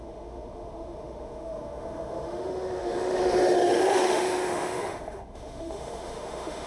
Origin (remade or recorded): remade